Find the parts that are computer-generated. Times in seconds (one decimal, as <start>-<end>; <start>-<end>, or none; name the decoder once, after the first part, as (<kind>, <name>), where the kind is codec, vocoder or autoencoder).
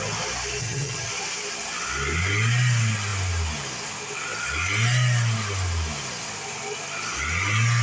0.6-1.1 (vocoder, HiFi-GAN)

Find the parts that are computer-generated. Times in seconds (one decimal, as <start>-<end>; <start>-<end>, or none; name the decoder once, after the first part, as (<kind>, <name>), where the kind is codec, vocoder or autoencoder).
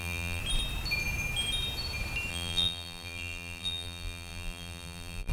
0.0-0.4 (vocoder, BigVGAN v2); 2.3-5.3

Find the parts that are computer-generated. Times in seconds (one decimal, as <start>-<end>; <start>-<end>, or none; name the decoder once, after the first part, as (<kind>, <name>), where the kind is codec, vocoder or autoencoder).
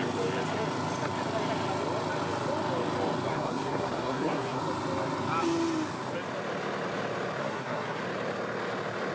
3.3-4.6 (codec, SNAC); 7.4-8.0